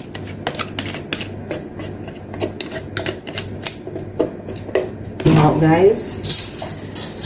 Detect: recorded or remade recorded